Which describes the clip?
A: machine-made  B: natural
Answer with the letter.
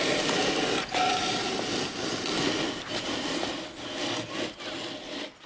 B